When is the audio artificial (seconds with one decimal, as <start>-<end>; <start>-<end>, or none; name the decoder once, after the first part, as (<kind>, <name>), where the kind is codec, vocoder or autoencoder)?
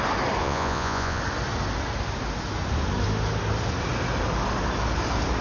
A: 0.4-1.2 (vocoder, Vocos)